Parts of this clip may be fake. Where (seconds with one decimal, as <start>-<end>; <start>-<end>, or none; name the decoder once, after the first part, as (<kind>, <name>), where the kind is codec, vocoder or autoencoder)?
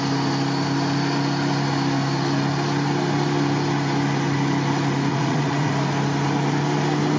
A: 5.1-5.7 (vocoder, Vocos)